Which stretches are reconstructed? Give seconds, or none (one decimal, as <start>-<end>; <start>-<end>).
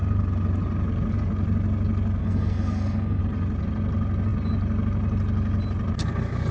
2.2-3.2